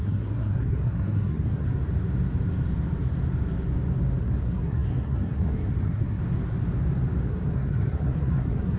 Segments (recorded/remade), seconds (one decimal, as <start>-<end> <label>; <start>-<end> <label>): 0.0-1.7 remade; 1.7-4.2 recorded; 4.2-6.2 remade; 6.2-7.3 recorded; 7.3-8.8 remade